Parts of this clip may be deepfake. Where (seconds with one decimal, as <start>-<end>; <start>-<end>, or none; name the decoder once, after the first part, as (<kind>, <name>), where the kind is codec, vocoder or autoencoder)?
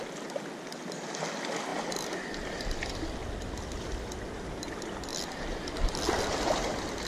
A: none